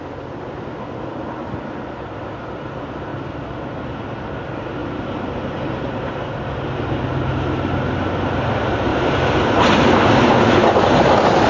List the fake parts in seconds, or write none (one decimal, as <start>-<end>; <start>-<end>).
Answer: 3.1-3.8